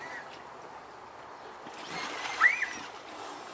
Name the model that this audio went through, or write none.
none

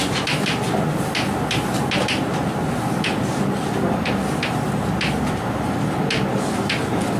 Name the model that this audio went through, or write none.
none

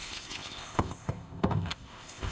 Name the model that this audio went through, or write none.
codec, ZipCodec